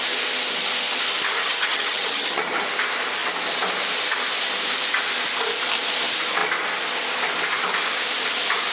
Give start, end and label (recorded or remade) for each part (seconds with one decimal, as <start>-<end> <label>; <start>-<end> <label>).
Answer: 0.0-1.4 recorded; 1.4-2.4 remade; 2.4-8.7 recorded